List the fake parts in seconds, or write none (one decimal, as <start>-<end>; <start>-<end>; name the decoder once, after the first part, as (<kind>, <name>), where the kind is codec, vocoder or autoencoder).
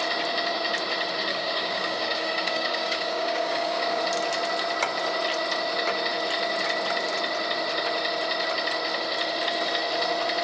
1.3-4.0 (codec, DAC)